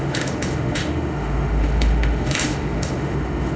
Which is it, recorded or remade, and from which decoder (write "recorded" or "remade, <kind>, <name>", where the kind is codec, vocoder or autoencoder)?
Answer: remade, autoencoder, DAC-VAE